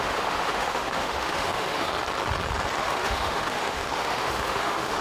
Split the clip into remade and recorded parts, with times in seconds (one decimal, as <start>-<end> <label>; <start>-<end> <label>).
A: 0.0-1.9 remade; 1.9-2.8 recorded; 2.8-5.0 remade